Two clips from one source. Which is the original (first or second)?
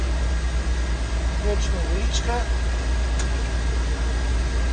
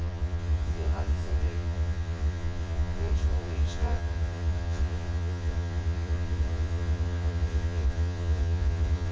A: first